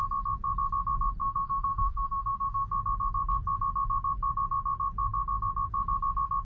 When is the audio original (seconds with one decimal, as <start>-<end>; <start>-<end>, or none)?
0.0-1.2; 2.7-6.4